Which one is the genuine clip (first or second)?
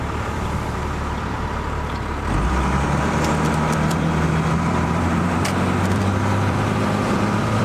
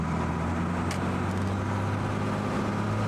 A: second